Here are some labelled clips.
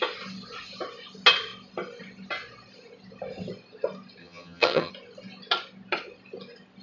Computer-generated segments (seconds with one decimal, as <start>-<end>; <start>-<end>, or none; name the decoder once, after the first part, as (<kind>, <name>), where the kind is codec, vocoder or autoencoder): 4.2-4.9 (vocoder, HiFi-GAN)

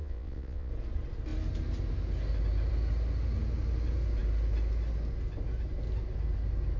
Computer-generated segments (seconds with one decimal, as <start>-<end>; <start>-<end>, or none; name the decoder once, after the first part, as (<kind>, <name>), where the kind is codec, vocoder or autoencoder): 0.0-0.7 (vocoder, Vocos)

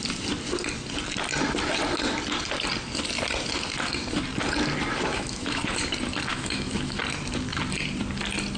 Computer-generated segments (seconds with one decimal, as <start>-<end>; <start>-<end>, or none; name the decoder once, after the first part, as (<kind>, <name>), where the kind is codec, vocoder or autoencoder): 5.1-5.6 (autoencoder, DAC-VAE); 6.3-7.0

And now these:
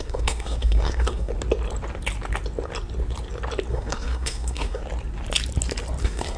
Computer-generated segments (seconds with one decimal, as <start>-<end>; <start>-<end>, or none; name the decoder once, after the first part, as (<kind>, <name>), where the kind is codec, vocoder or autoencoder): 0.0-1.3 (codec, SNAC); 3.7-4.8; 6.0-6.4

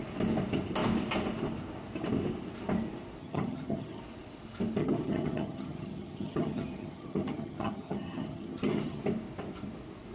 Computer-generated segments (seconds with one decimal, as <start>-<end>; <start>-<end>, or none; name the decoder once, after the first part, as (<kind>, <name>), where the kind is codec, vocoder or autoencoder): 3.2-4.0 (vocoder, HiFi-GAN); 4.8-9.0

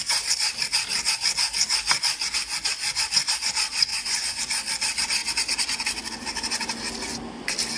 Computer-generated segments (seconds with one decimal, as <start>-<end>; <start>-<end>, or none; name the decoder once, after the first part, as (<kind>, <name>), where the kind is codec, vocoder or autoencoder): 3.9-4.4 (vocoder, Vocos)

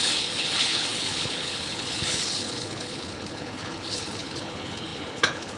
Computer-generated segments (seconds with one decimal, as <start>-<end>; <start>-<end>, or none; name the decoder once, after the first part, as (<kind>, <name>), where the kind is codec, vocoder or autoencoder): 0.0-5.6 (codec, HILCodec)